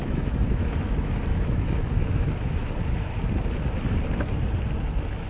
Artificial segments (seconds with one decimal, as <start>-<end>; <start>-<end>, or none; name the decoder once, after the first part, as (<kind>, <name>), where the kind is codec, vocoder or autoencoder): 0.0-3.2 (autoencoder, DAC-VAE)